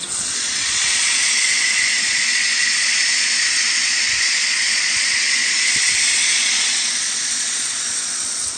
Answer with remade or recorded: remade